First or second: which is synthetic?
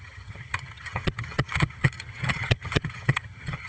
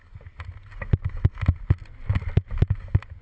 first